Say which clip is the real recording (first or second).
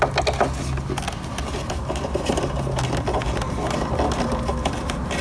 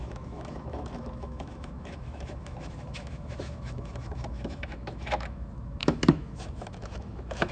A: first